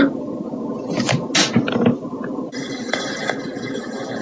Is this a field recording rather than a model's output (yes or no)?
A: yes